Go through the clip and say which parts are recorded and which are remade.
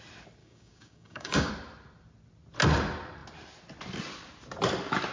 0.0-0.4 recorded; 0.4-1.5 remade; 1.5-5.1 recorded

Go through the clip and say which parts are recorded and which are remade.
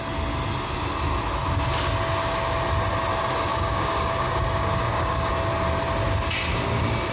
0.0-3.5 recorded; 3.5-5.3 remade; 5.3-7.1 recorded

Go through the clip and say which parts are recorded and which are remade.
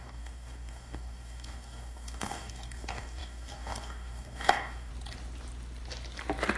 0.0-4.9 remade; 4.9-6.6 recorded